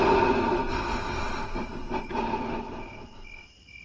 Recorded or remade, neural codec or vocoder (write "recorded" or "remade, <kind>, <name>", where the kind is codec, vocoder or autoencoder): recorded